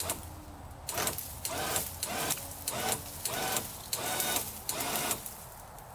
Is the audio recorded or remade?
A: recorded